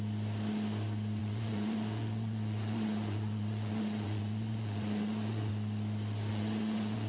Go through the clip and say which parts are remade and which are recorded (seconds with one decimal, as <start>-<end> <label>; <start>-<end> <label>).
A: 0.0-1.2 recorded; 1.2-5.5 remade; 5.5-6.3 recorded; 6.3-7.1 remade